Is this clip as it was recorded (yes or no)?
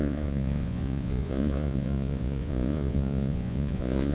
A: no